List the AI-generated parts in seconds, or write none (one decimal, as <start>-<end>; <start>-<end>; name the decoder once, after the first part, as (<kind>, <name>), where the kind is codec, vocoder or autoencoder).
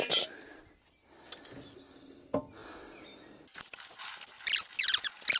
none